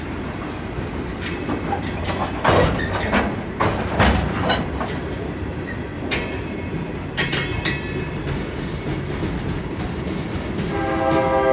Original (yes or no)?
yes